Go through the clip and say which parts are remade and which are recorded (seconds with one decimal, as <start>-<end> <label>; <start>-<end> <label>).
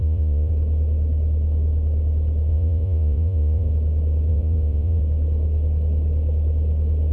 0.0-0.5 remade; 0.5-2.5 recorded; 2.5-3.7 remade; 3.7-4.3 recorded; 4.3-5.0 remade; 5.0-7.1 recorded